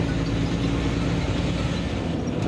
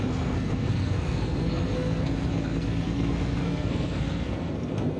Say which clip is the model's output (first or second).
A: second